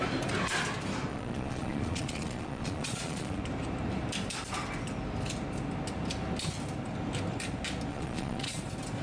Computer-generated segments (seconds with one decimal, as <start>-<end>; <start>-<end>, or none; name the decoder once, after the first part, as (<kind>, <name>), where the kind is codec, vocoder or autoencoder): 1.1-3.4 (vocoder, Vocos); 7.9-8.6